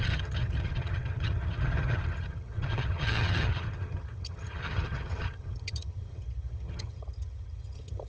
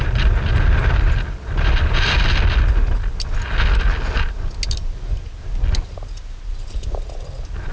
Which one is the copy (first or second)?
first